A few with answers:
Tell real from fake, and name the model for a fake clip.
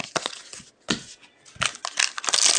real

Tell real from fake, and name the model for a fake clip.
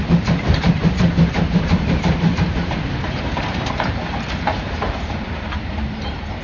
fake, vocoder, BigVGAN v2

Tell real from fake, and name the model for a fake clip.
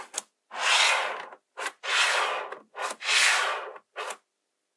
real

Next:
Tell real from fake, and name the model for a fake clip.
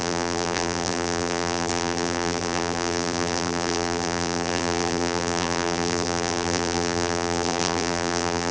fake, vocoder, BigVGAN v2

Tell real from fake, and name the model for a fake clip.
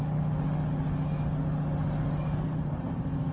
real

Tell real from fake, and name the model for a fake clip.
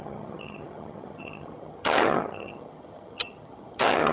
fake, vocoder, HiFi-GAN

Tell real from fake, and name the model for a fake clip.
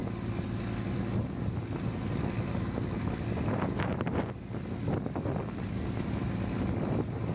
real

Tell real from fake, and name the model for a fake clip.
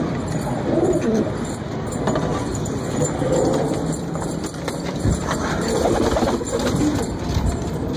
fake, vocoder, BigVGAN v2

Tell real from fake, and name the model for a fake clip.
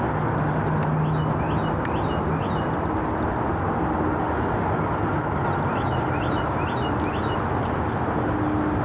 real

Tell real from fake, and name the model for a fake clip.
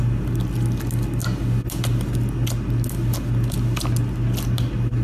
real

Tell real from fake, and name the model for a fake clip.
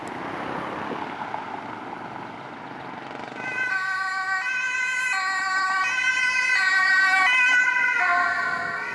real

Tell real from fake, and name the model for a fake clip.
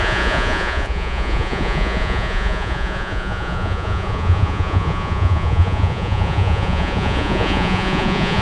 fake, vocoder, Vocos